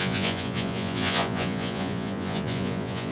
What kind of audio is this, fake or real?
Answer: fake